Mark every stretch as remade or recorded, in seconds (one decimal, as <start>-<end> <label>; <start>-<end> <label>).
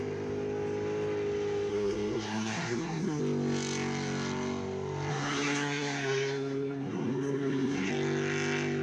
0.0-1.7 recorded; 1.7-3.2 remade; 3.2-5.1 recorded; 5.1-7.9 remade; 7.9-8.8 recorded